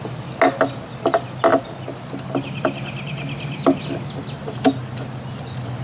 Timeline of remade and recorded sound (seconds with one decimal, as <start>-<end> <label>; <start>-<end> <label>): 0.0-5.8 recorded